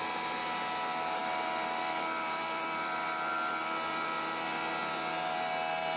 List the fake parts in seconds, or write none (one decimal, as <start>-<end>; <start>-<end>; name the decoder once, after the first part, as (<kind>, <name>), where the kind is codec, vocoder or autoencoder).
1.2-4.8 (vocoder, BigVGAN v2)